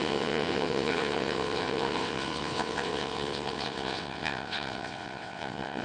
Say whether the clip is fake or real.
fake